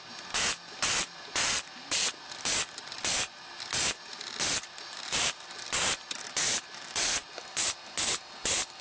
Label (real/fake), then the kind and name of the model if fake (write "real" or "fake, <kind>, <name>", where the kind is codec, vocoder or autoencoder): real